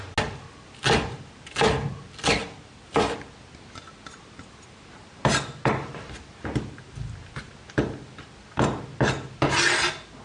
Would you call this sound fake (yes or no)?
no